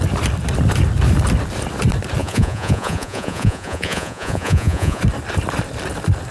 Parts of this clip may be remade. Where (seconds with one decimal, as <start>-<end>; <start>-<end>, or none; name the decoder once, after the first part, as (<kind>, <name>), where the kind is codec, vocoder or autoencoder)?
2.2-5.0 (vocoder, Vocos)